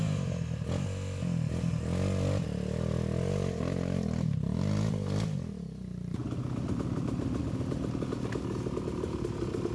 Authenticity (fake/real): real